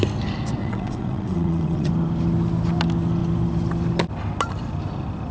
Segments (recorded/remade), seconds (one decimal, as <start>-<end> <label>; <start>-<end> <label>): 0.0-0.6 recorded; 0.6-1.9 remade; 1.9-5.3 recorded